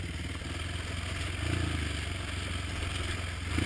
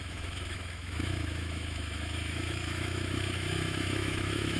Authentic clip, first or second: first